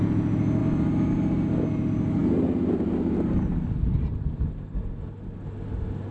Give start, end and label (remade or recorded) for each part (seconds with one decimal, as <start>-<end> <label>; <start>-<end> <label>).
0.0-6.1 recorded